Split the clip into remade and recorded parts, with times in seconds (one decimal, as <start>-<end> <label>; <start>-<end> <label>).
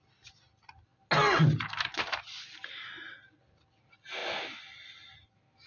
0.0-5.7 recorded